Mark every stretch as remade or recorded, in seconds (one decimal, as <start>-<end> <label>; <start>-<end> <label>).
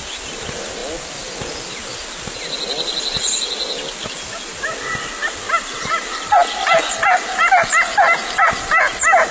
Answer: 0.0-9.3 recorded